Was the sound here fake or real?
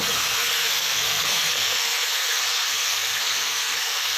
fake